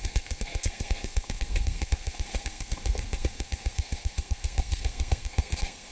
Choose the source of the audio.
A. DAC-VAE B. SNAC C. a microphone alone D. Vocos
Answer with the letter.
B